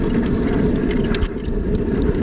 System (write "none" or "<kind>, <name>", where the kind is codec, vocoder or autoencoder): none